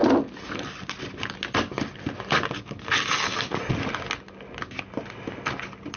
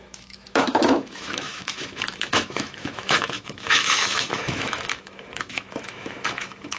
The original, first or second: first